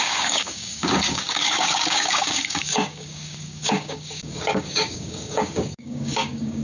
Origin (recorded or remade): remade